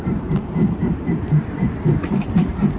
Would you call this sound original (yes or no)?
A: no